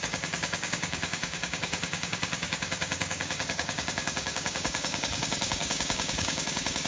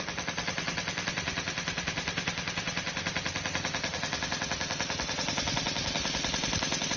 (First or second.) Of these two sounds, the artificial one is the first